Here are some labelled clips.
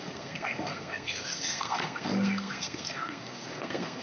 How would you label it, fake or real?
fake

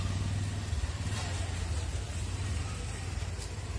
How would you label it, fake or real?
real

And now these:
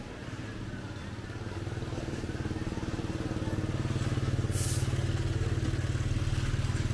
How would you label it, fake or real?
real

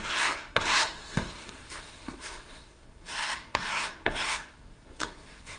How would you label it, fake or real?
fake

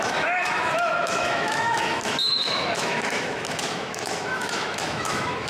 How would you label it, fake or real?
fake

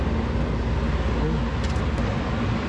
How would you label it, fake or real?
real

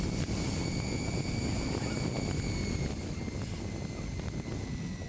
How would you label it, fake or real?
real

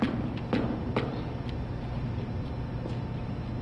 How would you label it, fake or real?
real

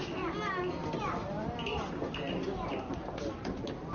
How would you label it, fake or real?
real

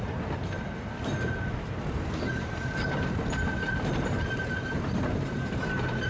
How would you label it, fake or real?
real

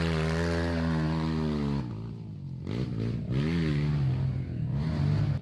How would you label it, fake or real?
real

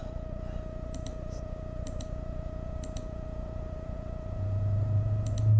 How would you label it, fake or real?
real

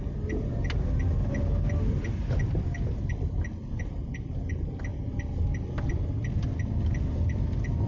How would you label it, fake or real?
real